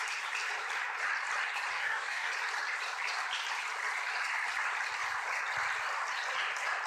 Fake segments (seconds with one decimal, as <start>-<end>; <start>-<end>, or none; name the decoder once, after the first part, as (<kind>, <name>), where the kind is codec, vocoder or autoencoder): 1.7-2.3 (codec, DAC)